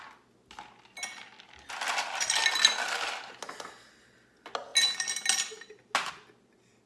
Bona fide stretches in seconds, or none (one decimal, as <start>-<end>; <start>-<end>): 0.0-6.9